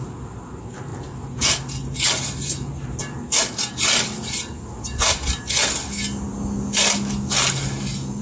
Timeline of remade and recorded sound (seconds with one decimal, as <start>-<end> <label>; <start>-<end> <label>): 0.0-8.2 recorded

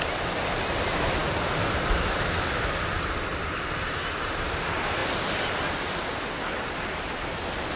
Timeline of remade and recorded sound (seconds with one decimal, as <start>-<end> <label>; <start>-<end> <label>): 0.0-7.8 recorded

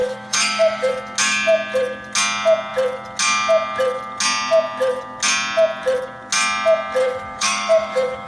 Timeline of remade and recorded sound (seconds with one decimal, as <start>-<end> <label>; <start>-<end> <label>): 0.0-0.9 remade; 0.9-7.0 recorded; 7.0-8.3 remade

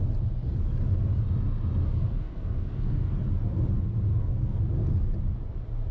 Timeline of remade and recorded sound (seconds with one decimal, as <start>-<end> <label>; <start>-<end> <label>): 0.0-1.9 recorded; 1.9-3.1 remade; 3.1-4.1 recorded; 4.1-4.6 remade; 4.6-5.9 recorded

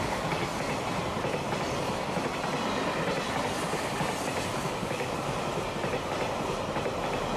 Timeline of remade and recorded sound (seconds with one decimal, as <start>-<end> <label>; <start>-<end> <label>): 0.0-0.4 remade; 0.4-4.8 recorded; 4.8-5.5 remade; 5.5-7.4 recorded

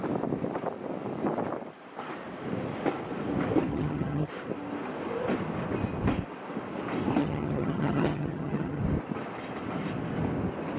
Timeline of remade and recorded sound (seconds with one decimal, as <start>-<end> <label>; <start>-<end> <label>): 0.0-3.7 recorded; 3.7-4.3 remade; 4.3-7.2 recorded; 7.2-8.8 remade; 8.8-10.8 recorded

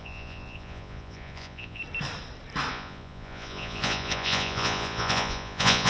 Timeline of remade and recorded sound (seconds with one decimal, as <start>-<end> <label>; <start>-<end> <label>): 0.0-1.8 remade; 1.8-2.7 recorded; 2.7-5.9 remade